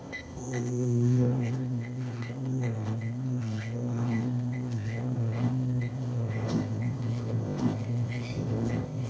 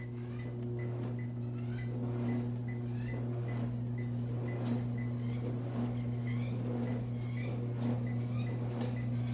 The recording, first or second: second